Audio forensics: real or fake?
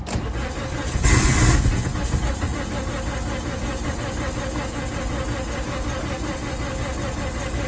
real